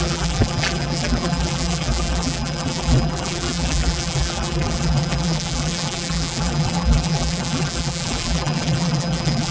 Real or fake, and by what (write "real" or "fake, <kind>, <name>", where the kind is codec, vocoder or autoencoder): fake, vocoder, BigVGAN v2